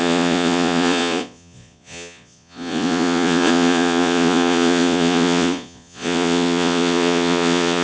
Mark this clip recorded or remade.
remade